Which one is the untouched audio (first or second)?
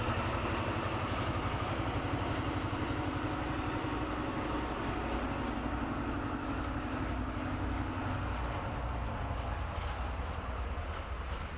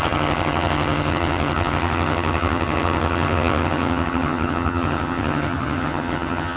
first